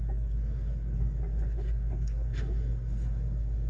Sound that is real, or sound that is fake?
fake